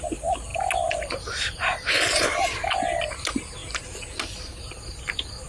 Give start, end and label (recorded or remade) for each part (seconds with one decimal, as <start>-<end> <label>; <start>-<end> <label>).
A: 0.0-5.5 recorded

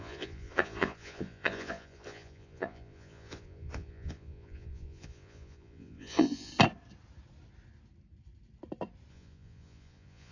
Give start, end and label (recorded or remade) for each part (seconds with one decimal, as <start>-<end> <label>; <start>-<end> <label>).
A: 0.0-6.5 remade; 6.5-9.1 recorded; 9.1-10.3 remade

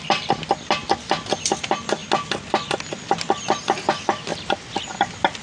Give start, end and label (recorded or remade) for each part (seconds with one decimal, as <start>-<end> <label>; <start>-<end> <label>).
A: 0.0-5.4 recorded